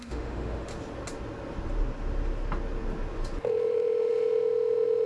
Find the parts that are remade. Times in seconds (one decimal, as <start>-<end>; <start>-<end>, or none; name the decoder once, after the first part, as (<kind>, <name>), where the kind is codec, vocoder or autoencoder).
0.0-0.7 (autoencoder, DAC-VAE); 3.4-5.1